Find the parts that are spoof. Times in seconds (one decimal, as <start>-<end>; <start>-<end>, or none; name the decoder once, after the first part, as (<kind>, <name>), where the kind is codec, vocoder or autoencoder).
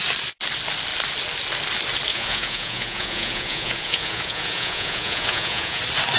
2.1-5.8 (vocoder, Vocos)